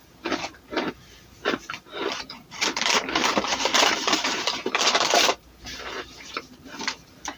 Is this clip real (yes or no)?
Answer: no